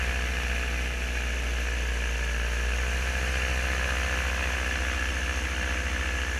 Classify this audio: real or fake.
real